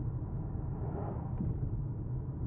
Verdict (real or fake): real